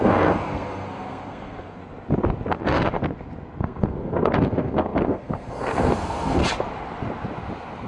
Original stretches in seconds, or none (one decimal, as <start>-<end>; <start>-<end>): 1.8-2.5; 3.0-3.6; 6.4-7.9